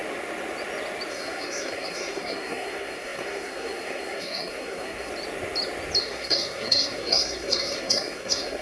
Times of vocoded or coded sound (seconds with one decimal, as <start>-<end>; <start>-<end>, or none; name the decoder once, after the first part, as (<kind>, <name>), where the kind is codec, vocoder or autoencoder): 1.1-5.1 (codec, SNAC); 6.0-8.6